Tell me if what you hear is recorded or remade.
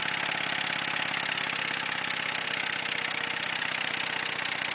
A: recorded